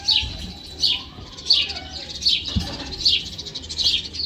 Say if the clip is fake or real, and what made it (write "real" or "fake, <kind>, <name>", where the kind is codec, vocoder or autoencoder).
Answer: real